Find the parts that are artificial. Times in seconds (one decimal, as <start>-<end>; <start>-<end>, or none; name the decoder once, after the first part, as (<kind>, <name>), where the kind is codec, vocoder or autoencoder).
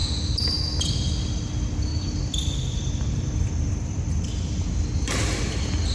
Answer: 1.9-5.4 (vocoder, BigVGAN v2)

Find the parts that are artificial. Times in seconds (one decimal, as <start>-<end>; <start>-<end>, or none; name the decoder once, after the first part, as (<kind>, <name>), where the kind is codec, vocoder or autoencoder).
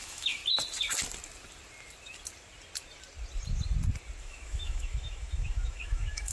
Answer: 0.0-0.4 (autoencoder, DAC-VAE); 4.2-6.3